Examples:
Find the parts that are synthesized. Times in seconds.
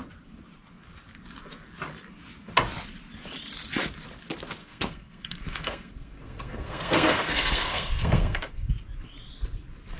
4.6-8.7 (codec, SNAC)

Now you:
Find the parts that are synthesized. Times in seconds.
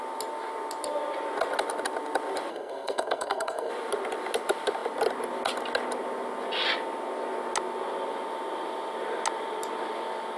2.5-3.7 (codec, SNAC)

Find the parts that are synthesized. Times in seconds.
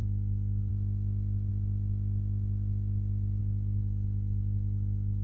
none